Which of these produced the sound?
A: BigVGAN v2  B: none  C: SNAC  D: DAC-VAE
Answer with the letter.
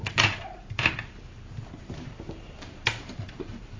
A